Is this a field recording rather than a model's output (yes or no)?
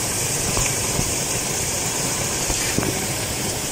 no